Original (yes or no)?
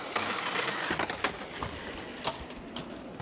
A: yes